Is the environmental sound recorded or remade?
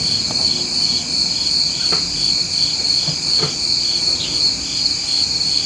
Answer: recorded